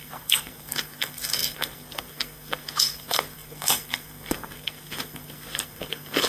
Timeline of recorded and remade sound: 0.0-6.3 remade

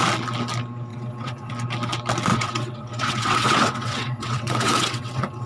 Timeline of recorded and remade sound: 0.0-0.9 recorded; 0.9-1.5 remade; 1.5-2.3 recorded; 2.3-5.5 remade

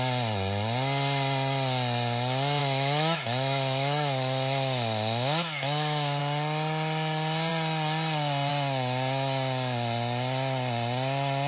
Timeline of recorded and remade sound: 0.0-2.6 recorded; 2.6-6.2 remade; 6.2-11.5 recorded